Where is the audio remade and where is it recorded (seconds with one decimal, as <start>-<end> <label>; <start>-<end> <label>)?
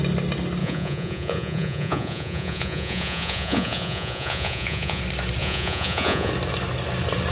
0.0-0.6 recorded; 0.6-5.0 remade; 5.0-5.4 recorded; 5.4-6.3 remade; 6.3-7.3 recorded